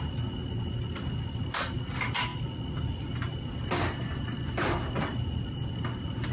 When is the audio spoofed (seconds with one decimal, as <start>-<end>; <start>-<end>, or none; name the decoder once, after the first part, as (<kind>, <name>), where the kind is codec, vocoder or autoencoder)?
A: none